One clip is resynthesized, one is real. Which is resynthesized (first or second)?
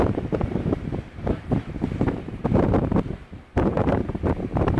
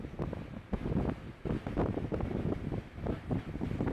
first